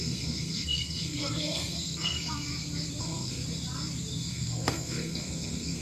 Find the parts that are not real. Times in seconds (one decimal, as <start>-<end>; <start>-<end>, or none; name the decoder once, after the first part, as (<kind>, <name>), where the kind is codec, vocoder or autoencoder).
0.0-2.5 (codec, SNAC); 3.0-3.4; 4.1-5.8